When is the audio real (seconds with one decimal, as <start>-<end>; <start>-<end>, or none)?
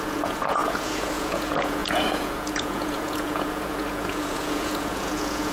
none